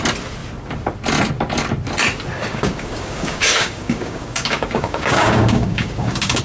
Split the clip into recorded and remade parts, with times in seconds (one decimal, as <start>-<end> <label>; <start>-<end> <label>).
0.0-2.5 recorded; 2.5-6.4 remade